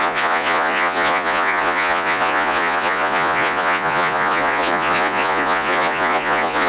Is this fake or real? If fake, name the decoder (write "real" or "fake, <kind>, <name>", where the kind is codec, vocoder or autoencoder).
fake, vocoder, Vocos